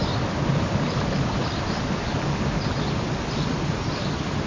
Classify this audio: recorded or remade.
recorded